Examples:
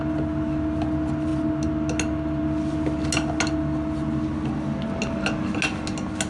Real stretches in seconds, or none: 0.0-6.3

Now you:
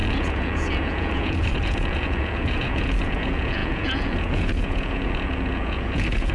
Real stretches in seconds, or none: none

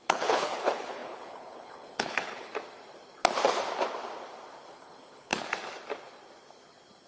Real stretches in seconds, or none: 2.5-4.7; 5.3-7.1